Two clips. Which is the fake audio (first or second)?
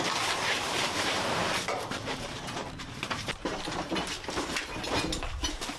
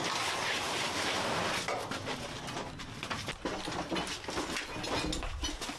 first